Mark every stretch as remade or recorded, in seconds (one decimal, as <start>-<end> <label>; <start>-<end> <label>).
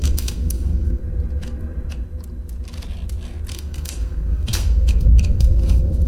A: 0.0-1.0 remade; 1.0-3.5 recorded; 3.5-6.1 remade